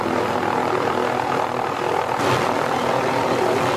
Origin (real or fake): real